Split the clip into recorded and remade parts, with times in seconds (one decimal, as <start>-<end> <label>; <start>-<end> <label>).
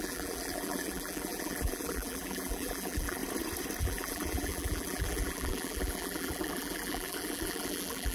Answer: 0.0-3.2 remade; 3.2-3.8 recorded; 3.8-8.1 remade